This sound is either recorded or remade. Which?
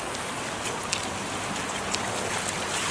recorded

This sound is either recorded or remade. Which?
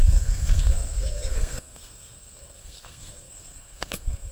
remade